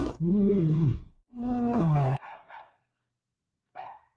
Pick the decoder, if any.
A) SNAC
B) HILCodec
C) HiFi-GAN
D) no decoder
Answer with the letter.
A